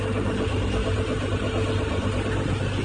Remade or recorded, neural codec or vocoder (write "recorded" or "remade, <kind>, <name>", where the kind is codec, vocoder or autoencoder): recorded